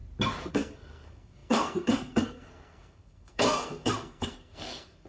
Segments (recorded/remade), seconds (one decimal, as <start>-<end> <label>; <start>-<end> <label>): 0.0-0.5 recorded; 0.5-5.1 remade